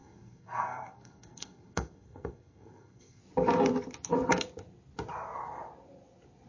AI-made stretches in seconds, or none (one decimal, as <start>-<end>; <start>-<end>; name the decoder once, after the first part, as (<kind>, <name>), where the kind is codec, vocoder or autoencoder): 0.0-3.2 (codec, SNAC)